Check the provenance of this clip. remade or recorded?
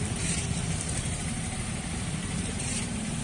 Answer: remade